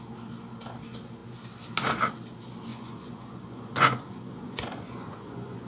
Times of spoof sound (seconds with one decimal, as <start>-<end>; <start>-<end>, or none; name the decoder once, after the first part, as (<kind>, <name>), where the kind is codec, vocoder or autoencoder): 2.7-5.7 (vocoder, Vocos)